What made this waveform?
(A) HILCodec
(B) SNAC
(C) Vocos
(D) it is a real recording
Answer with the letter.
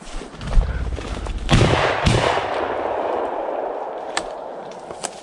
D